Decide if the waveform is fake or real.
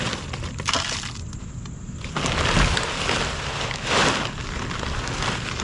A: real